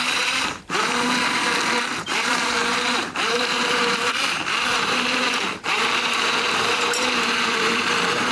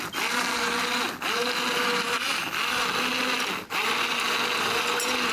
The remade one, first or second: first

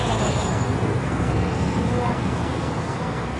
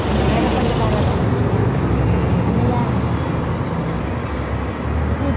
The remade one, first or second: first